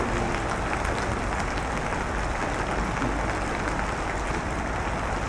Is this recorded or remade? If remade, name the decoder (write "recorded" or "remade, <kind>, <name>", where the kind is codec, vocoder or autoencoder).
recorded